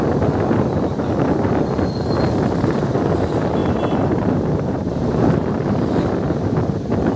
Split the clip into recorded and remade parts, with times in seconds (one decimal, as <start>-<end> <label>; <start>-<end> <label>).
0.0-3.6 recorded; 3.6-5.7 remade; 5.7-7.2 recorded